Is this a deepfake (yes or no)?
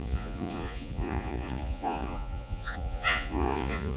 yes